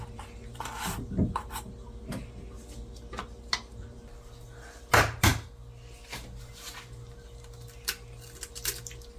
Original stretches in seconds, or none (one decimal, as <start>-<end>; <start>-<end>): 0.0-9.2